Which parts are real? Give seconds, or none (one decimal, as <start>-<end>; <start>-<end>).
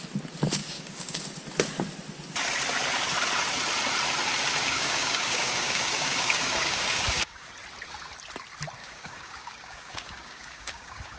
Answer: 0.0-0.6; 1.2-4.6; 7.5-8.8